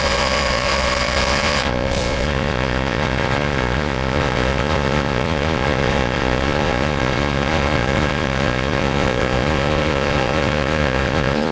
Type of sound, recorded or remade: remade